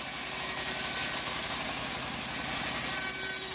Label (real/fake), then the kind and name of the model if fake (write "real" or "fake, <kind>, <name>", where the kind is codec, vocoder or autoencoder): real